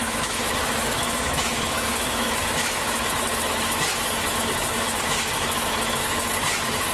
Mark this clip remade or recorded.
remade